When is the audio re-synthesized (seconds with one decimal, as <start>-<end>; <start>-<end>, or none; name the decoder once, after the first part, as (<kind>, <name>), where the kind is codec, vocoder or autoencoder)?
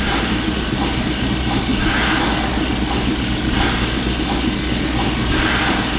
0.0-1.7 (vocoder, BigVGAN v2); 5.3-6.0